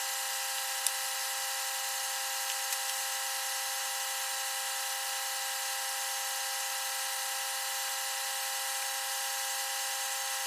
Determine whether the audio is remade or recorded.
recorded